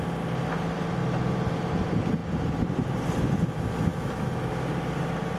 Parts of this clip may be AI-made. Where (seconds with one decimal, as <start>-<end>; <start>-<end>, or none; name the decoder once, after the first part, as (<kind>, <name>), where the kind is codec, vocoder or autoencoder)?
3.9-4.5 (autoencoder, DAC-VAE)